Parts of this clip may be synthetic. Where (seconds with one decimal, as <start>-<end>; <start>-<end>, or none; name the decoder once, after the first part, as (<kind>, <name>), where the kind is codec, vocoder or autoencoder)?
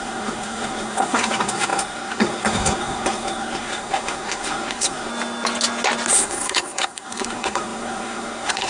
0.0-5.1 (codec, SNAC); 6.1-8.7